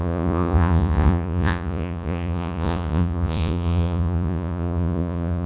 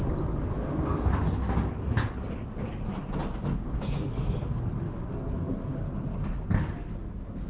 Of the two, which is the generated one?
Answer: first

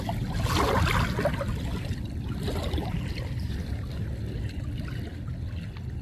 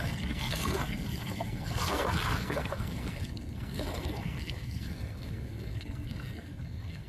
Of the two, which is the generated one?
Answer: second